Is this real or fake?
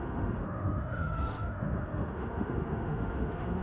fake